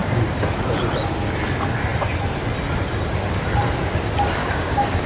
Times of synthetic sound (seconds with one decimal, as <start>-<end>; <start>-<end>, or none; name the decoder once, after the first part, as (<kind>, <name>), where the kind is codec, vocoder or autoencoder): 0.0-0.6 (codec, DAC); 4.4-5.1